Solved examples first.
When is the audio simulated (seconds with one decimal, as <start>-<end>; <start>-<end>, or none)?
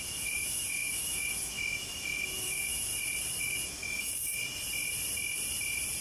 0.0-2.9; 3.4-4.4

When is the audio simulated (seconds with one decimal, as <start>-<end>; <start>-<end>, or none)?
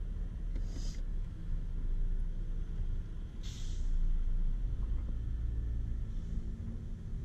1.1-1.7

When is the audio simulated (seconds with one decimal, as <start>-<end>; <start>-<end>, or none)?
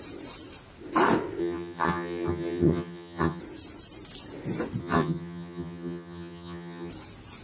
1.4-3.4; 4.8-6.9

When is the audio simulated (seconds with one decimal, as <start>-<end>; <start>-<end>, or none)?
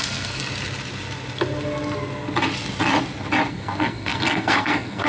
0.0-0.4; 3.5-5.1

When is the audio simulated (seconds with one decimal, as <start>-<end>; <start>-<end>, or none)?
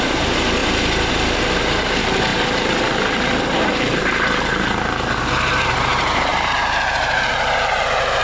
none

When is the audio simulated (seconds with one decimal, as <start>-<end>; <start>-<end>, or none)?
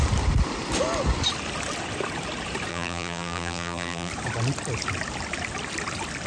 2.7-4.1